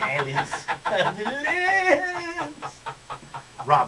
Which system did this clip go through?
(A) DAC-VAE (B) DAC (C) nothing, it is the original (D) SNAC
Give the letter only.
A